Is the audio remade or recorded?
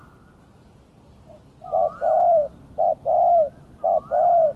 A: recorded